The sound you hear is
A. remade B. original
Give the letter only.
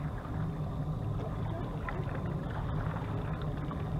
B